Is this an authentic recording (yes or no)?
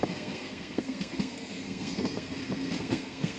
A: no